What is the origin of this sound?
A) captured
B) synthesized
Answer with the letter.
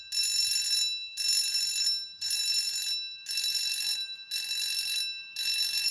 A